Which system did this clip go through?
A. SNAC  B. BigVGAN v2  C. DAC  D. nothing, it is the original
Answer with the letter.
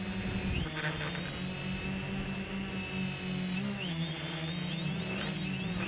D